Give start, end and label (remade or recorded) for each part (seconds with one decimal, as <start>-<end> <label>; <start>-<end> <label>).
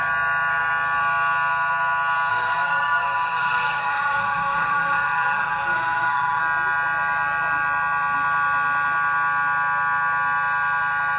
0.0-2.3 recorded; 2.3-6.4 remade; 6.4-11.2 recorded